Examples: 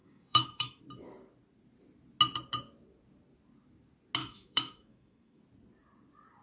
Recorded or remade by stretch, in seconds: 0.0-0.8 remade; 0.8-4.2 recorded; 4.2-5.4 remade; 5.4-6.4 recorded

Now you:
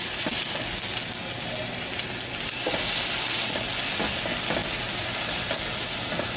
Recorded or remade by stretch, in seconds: 0.0-6.4 recorded

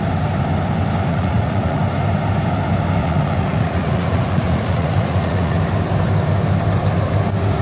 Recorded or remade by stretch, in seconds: 0.0-1.1 recorded; 1.1-1.8 remade; 1.8-3.0 recorded; 3.0-5.6 remade; 5.6-7.6 recorded

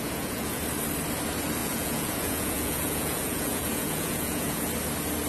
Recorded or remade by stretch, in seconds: 0.0-0.6 remade; 0.6-1.6 recorded; 1.6-4.7 remade; 4.7-5.3 recorded

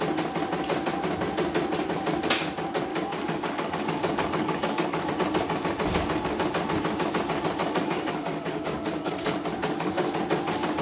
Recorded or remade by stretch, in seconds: 0.0-2.9 recorded; 2.9-5.1 remade; 5.1-7.6 recorded; 7.6-10.2 remade; 10.2-10.8 recorded

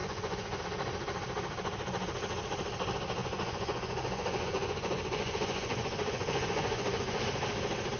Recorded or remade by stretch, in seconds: 0.0-0.6 remade; 0.6-3.2 recorded; 3.2-7.2 remade; 7.2-8.0 recorded

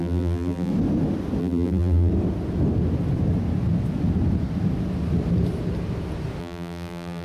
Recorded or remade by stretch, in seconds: 0.0-0.7 remade; 0.7-1.4 recorded; 1.4-2.1 remade; 2.1-6.4 recorded; 6.4-7.2 remade

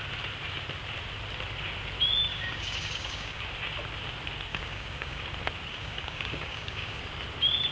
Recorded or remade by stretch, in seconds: 0.0-2.3 recorded; 2.3-3.4 remade; 3.4-4.5 recorded; 4.5-5.2 remade; 5.2-5.7 recorded; 5.7-7.0 remade; 7.0-7.7 recorded